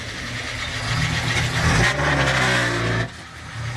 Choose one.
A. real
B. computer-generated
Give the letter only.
A